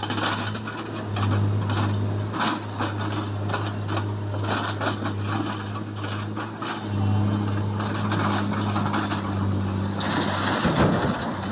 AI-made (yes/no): no